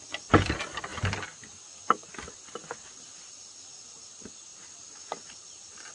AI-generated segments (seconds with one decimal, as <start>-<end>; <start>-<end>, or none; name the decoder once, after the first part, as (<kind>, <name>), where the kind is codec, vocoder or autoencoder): none